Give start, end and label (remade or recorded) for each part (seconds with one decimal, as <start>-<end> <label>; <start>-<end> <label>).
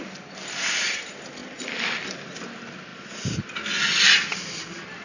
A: 0.0-5.0 recorded